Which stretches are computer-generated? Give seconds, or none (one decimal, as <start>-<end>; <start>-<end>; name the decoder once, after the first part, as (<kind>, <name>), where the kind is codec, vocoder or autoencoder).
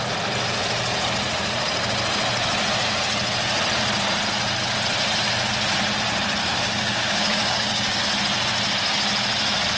6.4-8.0 (codec, DAC)